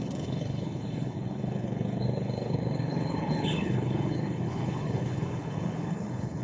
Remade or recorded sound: remade